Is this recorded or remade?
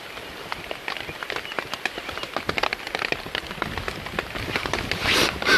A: recorded